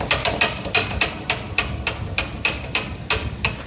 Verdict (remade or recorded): recorded